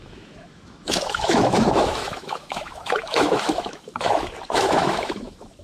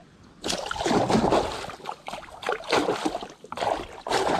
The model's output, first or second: first